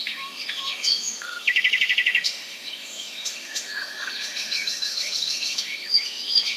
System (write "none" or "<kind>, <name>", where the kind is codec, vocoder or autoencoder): autoencoder, DAC-VAE